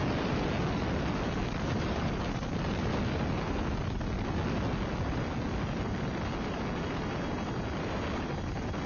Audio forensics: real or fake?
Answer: real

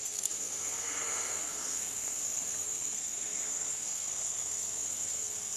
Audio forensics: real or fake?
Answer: fake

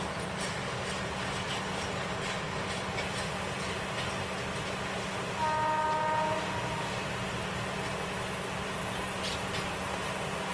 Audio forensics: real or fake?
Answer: real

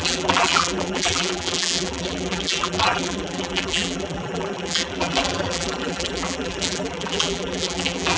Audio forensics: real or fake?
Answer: fake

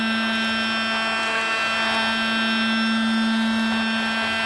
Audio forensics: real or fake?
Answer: real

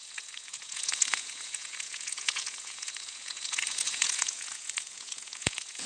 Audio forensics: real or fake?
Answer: fake